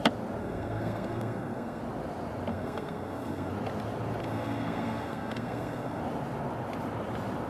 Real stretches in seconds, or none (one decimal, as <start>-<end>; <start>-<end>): 0.0-0.4; 1.8-2.5; 3.5-4.2; 6.0-7.5